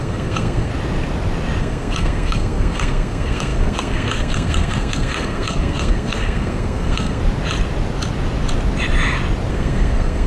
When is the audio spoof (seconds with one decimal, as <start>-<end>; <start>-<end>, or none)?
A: 0.0-0.7; 1.6-7.2; 9.5-10.3